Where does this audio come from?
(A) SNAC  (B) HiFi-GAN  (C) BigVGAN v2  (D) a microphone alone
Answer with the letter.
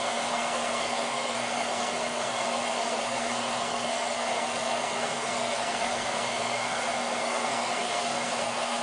A